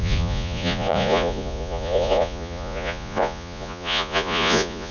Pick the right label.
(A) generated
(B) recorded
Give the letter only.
A